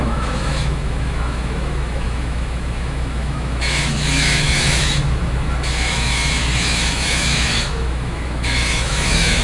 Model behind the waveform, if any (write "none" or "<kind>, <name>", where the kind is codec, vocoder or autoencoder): autoencoder, DAC-VAE